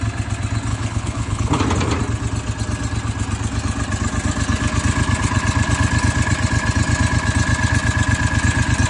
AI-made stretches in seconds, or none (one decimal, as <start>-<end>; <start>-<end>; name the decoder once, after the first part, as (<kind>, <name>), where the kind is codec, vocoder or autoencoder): 0.7-1.6 (codec, HILCodec)